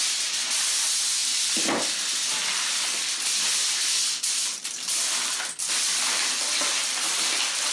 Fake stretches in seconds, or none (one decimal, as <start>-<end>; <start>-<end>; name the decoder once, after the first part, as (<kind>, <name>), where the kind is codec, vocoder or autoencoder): none